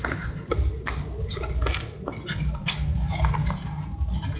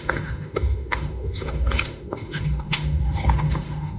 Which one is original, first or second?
first